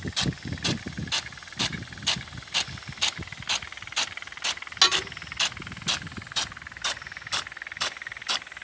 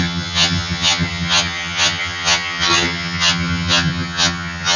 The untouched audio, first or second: first